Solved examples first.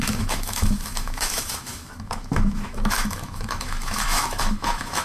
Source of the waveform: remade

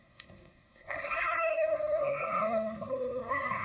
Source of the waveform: remade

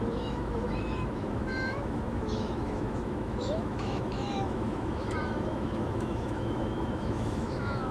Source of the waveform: remade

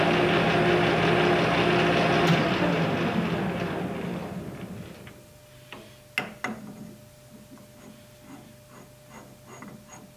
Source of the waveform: recorded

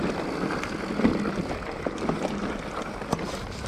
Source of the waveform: recorded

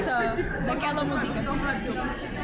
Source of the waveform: recorded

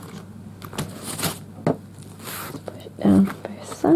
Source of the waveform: recorded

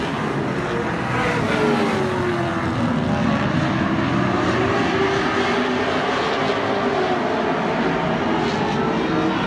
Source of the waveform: recorded